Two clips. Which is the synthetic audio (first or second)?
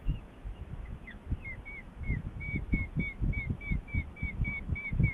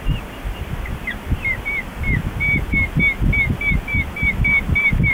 first